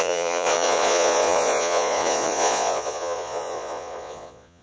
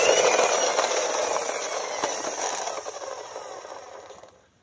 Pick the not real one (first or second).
first